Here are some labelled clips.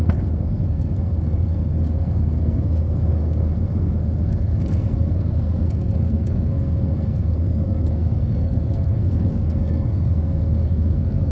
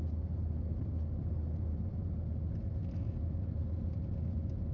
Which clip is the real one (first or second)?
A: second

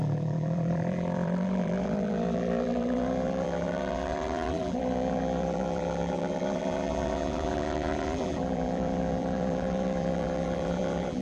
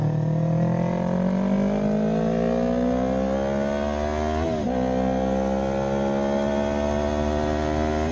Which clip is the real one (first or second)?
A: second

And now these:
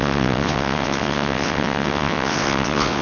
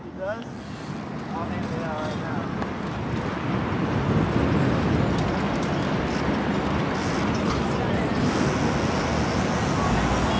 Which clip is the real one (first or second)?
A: second